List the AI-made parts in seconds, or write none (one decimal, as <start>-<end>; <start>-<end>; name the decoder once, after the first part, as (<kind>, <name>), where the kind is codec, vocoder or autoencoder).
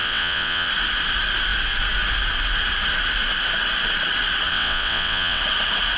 0.0-0.7 (vocoder, WaveNeXt); 4.5-5.4